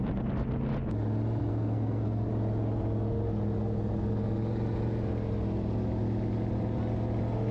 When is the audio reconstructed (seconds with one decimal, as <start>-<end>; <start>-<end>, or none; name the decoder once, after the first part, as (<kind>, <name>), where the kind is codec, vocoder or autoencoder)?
1.5-2.3 (codec, SNAC)